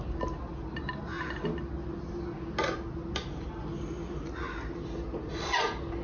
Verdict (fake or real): real